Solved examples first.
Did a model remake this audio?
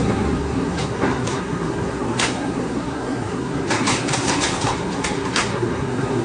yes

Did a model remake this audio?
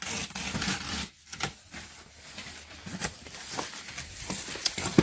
no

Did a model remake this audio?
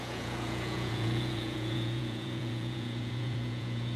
yes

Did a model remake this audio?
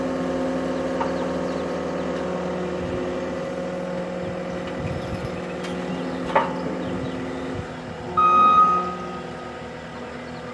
no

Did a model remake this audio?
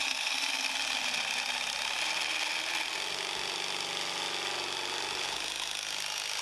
no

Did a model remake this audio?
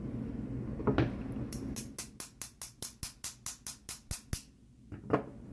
no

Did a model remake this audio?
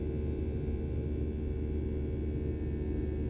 no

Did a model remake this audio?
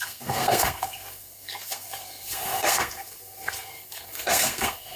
yes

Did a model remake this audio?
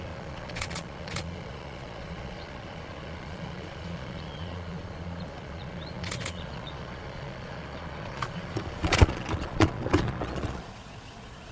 yes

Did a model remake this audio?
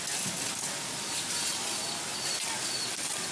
no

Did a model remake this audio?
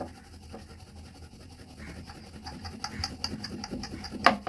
no